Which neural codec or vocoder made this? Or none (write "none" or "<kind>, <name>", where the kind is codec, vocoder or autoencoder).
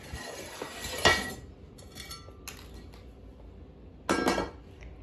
none